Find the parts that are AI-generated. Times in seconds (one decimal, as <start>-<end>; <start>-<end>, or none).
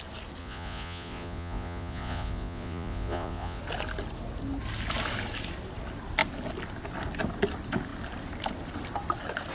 0.4-3.6